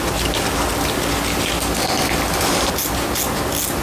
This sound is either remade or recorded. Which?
recorded